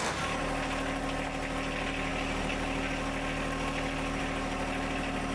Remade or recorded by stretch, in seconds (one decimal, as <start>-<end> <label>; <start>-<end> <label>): 0.0-5.3 recorded